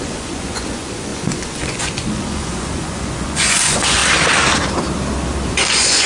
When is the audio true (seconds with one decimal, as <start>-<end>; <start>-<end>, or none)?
4.0-5.5